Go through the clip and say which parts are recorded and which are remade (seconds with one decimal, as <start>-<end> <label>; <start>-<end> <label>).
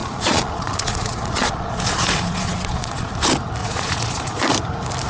0.0-3.1 remade; 3.1-3.6 recorded; 3.6-4.4 remade; 4.4-5.1 recorded